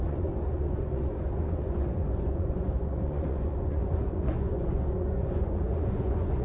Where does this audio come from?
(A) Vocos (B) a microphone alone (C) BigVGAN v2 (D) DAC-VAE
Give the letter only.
A